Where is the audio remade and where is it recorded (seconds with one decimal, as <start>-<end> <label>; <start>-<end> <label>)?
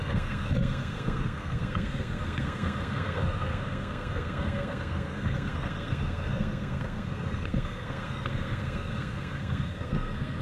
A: 0.0-10.4 remade